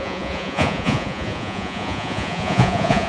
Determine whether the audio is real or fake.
fake